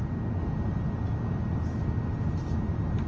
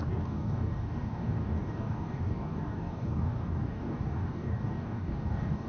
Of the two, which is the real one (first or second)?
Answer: first